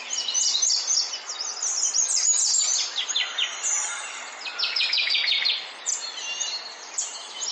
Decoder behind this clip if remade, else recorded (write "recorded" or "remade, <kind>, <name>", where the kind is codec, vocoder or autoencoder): recorded